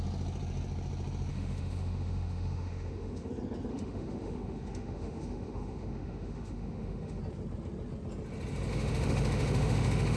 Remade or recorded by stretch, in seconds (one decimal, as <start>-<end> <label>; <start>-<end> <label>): 0.0-1.3 recorded; 1.3-3.3 remade; 3.3-3.7 recorded; 3.7-7.2 remade; 7.2-8.7 recorded; 8.7-10.2 remade